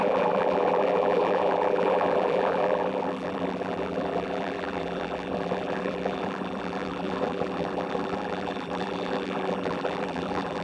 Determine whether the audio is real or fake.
fake